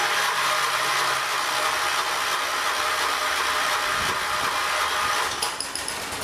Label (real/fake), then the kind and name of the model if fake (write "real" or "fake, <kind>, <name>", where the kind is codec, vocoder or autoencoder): real